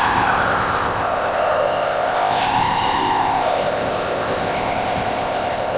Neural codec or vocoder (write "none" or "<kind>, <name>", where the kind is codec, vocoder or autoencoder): codec, ZipCodec